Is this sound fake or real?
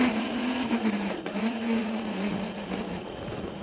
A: fake